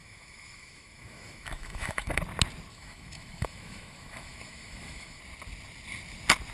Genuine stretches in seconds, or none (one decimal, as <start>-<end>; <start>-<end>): 2.2-2.7; 5.2-6.5

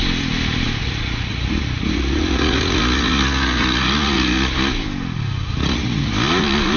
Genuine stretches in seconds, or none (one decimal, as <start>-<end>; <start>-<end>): 0.0-0.8; 4.5-5.6; 6.1-6.8

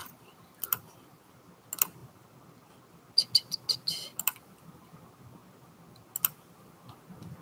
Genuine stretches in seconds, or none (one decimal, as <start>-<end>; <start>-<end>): 1.3-7.4

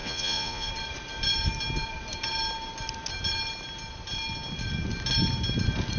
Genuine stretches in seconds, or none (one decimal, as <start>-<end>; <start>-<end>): 0.7-6.0

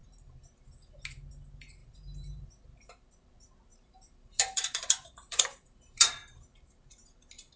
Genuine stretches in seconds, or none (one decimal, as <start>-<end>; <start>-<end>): 0.0-1.8; 2.5-3.7; 6.7-7.6

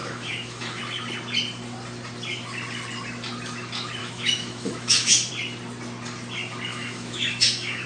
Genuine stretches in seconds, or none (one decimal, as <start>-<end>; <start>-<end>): 0.8-4.0; 5.3-6.7